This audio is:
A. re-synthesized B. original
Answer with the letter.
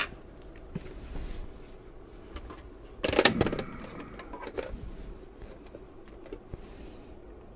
B